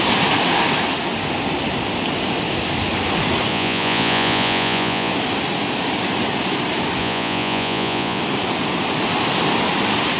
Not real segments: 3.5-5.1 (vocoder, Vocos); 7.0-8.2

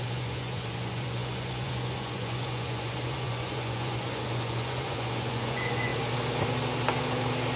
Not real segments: 0.0-5.9 (vocoder, Vocos)

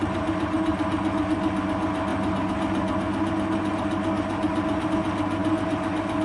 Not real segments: none

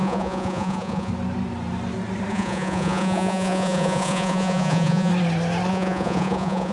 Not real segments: 0.0-1.1 (vocoder, Vocos); 2.3-5.1; 5.7-6.7

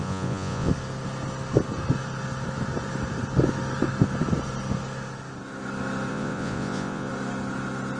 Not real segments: 0.0-0.7 (vocoder, Vocos); 6.1-7.1

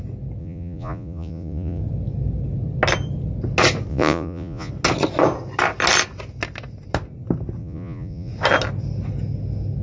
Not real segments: 0.4-1.8 (vocoder, Vocos); 3.9-4.7; 7.6-8.3